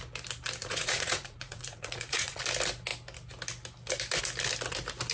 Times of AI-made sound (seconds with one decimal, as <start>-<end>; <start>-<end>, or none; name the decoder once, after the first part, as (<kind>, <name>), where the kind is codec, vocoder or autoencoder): 0.6-2.4 (vocoder, Vocos)